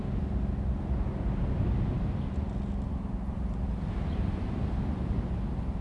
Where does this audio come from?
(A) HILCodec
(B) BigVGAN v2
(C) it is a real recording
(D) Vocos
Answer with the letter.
C